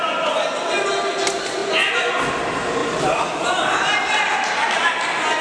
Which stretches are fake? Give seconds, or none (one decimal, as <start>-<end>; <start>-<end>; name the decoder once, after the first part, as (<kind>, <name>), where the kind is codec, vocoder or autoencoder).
1.6-2.1 (vocoder, BigVGAN v2); 2.8-4.5